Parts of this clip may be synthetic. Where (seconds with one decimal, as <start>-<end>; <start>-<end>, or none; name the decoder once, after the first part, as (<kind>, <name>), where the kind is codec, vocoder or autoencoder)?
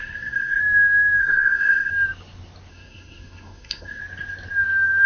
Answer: 0.0-0.6 (codec, SNAC); 1.2-1.9; 2.7-4.0